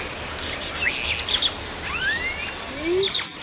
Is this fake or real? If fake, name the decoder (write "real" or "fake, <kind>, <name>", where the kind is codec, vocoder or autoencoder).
real